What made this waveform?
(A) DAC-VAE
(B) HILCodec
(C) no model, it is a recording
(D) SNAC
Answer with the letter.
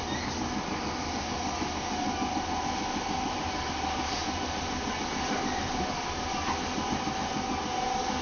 C